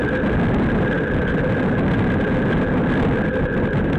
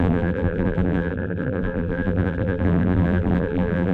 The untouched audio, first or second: first